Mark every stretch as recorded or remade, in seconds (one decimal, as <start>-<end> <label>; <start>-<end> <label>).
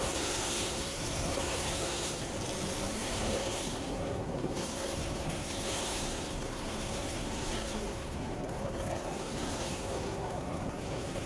0.0-2.3 remade; 2.3-2.9 recorded; 2.9-11.3 remade